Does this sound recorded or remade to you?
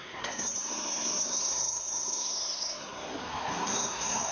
remade